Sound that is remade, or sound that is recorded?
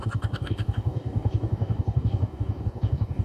remade